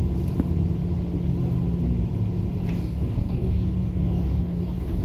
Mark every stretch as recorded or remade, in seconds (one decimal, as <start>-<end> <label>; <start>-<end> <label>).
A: 0.0-2.7 recorded; 2.7-5.0 remade